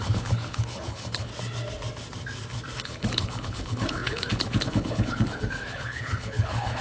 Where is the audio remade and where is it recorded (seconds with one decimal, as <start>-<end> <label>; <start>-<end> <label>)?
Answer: 0.0-1.3 remade; 1.3-2.8 recorded; 2.8-6.8 remade